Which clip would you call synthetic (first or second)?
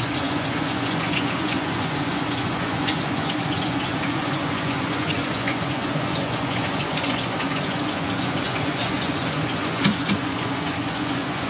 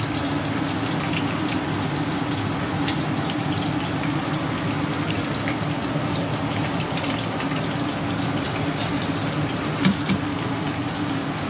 first